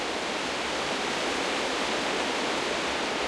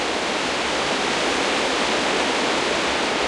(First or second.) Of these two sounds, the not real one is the first